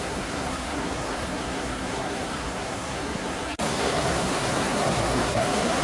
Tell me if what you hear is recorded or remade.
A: remade